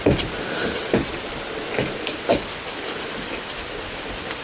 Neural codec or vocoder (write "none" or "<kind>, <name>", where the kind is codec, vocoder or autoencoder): none